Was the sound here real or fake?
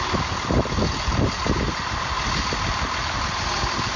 real